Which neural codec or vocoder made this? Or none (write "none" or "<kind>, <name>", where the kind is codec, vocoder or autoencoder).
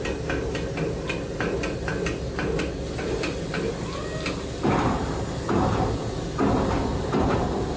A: none